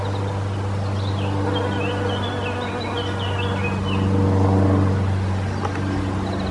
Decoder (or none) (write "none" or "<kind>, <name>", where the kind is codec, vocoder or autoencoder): none